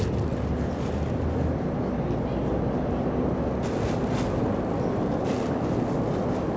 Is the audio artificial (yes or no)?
no